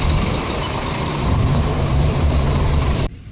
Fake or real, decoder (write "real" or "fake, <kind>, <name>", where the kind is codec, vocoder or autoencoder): fake, vocoder, BigVGAN v2